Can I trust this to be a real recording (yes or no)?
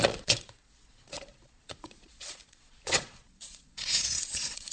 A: no